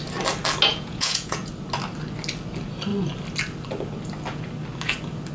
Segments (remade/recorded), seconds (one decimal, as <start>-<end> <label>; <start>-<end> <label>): 0.0-0.7 recorded; 0.7-1.5 remade; 1.5-5.3 recorded

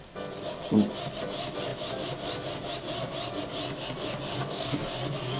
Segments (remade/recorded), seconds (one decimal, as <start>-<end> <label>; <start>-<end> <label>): 0.0-4.4 recorded; 4.4-4.9 remade; 4.9-5.4 recorded

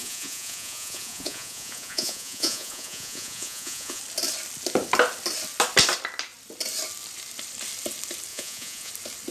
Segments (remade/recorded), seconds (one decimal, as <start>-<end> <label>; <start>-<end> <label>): 0.0-4.0 remade; 4.0-8.3 recorded; 8.3-8.9 remade; 8.9-9.3 recorded

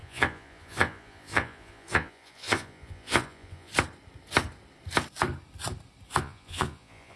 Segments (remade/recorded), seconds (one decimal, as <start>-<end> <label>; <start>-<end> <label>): 0.0-3.7 remade; 3.7-6.2 recorded; 6.2-7.2 remade